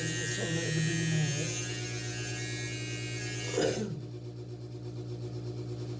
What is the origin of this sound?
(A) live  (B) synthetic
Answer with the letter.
A